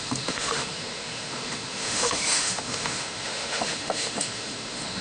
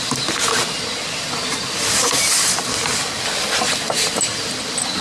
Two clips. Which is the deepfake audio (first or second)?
first